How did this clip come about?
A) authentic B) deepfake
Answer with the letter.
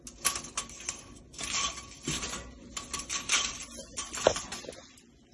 A